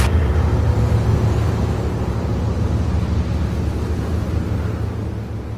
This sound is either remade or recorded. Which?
recorded